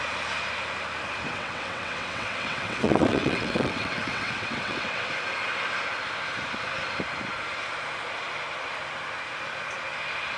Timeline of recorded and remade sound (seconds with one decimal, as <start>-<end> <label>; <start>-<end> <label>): 0.0-1.3 recorded; 1.3-5.0 remade; 5.0-10.4 recorded